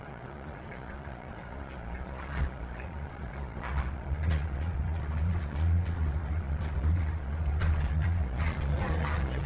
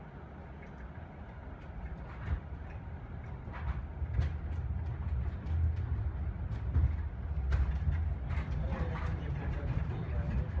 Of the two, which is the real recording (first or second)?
second